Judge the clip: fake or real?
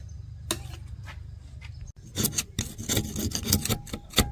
real